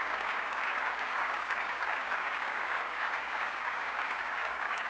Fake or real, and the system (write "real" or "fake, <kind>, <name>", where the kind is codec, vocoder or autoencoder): fake, codec, DAC